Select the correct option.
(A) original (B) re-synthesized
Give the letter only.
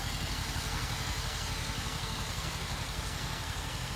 B